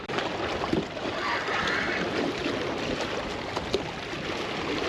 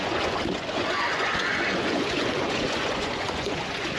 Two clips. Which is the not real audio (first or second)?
second